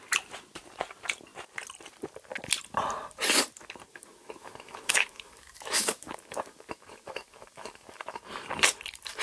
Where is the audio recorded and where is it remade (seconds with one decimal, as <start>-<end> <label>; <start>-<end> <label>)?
0.0-3.9 recorded; 3.9-8.2 remade; 8.2-9.2 recorded